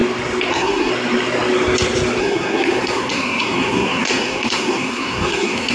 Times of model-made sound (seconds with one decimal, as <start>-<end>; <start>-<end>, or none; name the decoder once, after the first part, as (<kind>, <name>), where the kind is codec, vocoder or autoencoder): 0.5-0.9 (codec, SNAC); 2.2-5.7